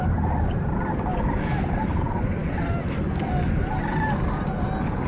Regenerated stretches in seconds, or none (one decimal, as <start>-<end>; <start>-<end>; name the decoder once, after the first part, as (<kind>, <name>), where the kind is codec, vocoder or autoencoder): none